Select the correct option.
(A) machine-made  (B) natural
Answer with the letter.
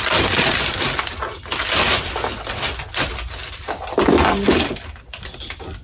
B